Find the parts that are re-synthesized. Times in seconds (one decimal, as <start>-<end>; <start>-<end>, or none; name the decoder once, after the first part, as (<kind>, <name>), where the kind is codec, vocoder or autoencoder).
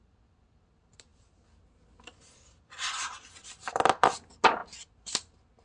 none